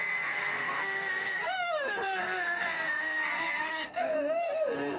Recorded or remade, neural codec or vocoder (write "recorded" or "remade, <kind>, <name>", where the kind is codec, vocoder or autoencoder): remade, codec, SNAC